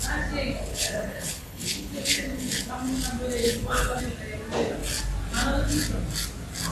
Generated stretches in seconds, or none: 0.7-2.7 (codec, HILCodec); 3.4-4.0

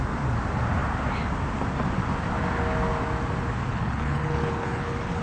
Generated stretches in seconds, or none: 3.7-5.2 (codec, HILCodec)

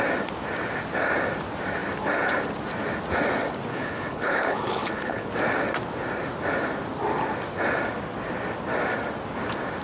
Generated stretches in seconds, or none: 3.7-5.3 (codec, HILCodec)

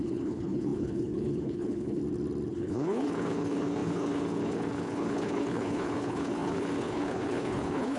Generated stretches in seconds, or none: 0.0-2.0 (codec, HILCodec); 2.5-8.0

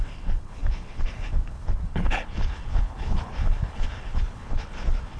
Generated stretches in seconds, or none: 0.0-5.2 (codec, HILCodec)

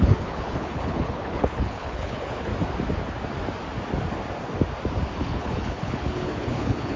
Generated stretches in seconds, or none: 0.0-2.5 (codec, HILCodec); 5.2-7.0

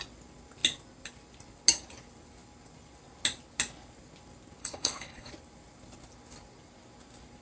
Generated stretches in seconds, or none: 4.6-5.3 (codec, HILCodec)

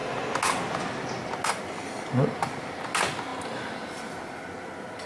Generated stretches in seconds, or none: none